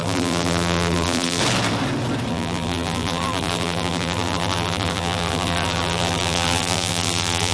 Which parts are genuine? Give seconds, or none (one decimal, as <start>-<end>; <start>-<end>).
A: 1.4-2.3